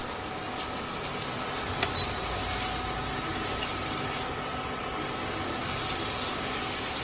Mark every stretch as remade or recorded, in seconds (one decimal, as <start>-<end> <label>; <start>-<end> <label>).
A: 0.0-7.0 recorded